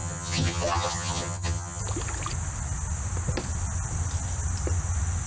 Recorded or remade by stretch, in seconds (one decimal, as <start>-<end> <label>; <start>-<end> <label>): 0.0-1.8 remade; 1.8-5.3 recorded

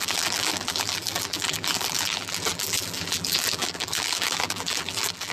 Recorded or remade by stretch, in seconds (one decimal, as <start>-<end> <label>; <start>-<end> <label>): 0.0-5.3 remade

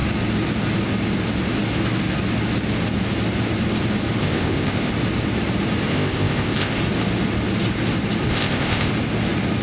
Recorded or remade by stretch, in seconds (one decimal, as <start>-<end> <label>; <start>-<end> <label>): 0.0-4.2 recorded; 4.2-4.9 remade; 4.9-5.9 recorded; 5.9-6.8 remade; 6.8-8.3 recorded; 8.3-8.9 remade; 8.9-9.6 recorded

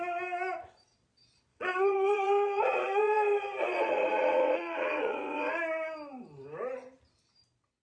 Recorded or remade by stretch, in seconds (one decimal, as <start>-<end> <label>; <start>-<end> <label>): 0.0-1.5 recorded; 1.5-5.5 remade; 5.5-7.8 recorded

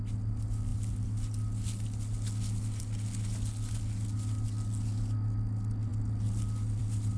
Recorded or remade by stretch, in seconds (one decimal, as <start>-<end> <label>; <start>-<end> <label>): 0.0-7.2 recorded